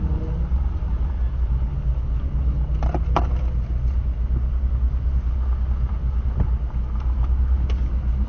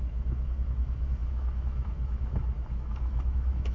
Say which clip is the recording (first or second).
first